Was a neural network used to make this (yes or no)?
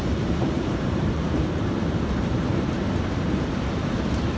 yes